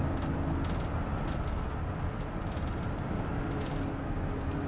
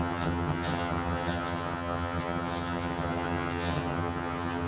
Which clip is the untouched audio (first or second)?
first